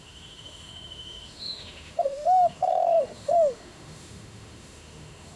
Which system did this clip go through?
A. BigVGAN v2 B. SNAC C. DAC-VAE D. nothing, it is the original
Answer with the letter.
C